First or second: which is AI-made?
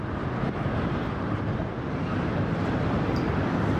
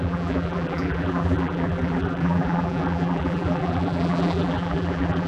second